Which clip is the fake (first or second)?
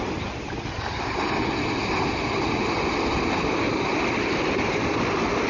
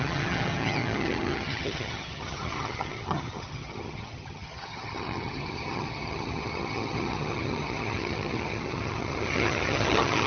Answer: second